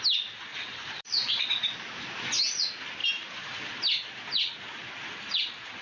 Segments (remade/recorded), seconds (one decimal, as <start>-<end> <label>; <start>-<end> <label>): 0.0-0.5 recorded; 0.5-1.4 remade; 1.4-3.0 recorded; 3.0-3.6 remade; 3.6-5.8 recorded